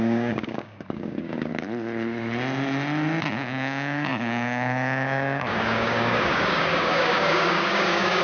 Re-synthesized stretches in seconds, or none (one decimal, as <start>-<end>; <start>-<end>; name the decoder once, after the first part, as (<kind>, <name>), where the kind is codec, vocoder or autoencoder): 0.0-1.5 (codec, DAC); 3.3-8.2